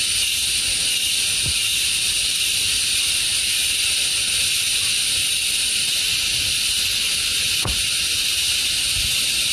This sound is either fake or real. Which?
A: real